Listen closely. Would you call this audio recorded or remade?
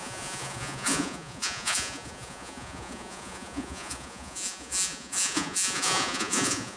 remade